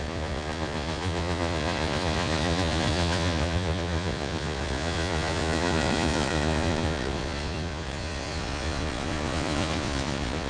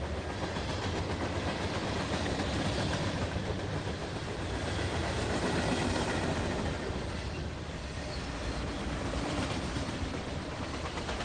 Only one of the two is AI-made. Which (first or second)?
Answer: first